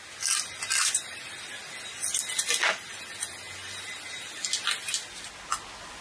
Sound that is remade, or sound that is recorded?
recorded